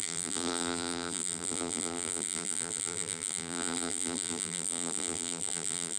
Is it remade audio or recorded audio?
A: remade